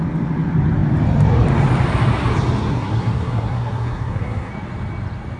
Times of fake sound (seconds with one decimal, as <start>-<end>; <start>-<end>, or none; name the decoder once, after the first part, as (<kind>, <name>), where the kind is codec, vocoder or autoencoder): 2.7-4.5 (codec, SNAC)